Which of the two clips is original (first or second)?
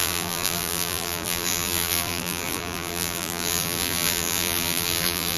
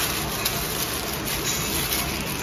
second